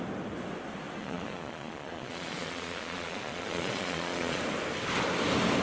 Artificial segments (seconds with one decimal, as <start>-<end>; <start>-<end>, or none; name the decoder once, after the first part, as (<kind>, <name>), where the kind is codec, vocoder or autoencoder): 1.0-4.4 (vocoder, Vocos)